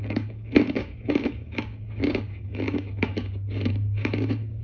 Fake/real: fake